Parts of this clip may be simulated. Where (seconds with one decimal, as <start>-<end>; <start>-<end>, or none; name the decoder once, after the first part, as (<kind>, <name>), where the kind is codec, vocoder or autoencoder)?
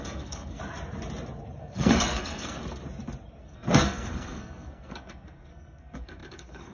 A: 0.0-0.6 (codec, SNAC); 1.6-2.6; 3.4-6.7